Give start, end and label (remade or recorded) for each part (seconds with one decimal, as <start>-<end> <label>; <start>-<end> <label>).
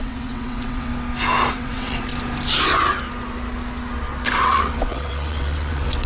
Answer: 0.0-0.9 remade; 0.9-1.5 recorded; 1.5-2.1 remade; 2.1-4.4 recorded; 4.4-6.1 remade